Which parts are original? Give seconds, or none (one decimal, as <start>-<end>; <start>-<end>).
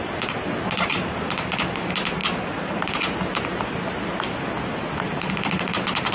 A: 0.0-6.1